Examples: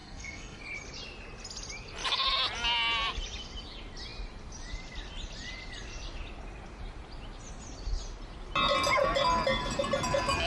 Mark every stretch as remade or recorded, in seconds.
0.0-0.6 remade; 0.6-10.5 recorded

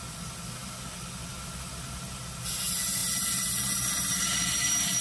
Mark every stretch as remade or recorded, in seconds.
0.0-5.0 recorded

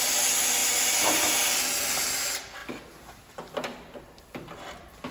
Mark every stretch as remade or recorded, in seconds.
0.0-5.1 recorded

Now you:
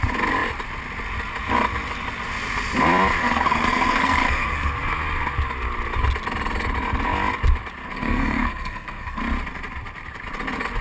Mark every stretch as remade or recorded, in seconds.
0.0-3.2 recorded; 3.2-4.7 remade; 4.7-7.8 recorded; 7.8-9.2 remade; 9.2-10.8 recorded